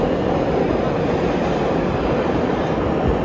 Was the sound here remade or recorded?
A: recorded